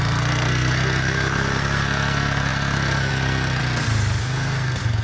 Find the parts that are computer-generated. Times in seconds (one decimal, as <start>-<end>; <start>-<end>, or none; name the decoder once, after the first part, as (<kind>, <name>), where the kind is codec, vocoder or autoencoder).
0.0-3.6 (codec, SNAC); 4.2-5.0